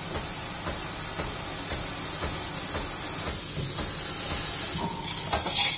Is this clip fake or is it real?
real